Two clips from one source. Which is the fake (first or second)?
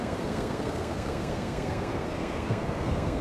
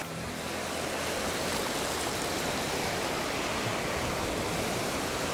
first